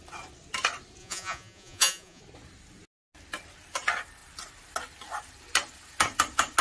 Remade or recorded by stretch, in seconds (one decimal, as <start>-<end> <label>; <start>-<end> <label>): 0.0-1.0 recorded; 1.0-2.2 remade; 2.2-6.6 recorded